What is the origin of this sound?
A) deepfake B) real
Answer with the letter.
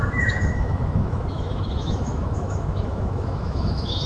A